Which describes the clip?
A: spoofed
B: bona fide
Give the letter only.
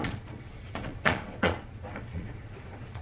A